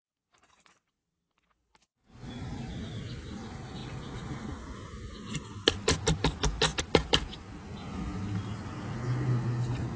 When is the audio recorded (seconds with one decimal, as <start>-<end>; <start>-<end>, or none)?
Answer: 0.0-10.0